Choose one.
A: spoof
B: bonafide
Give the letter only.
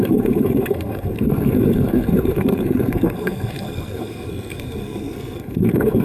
A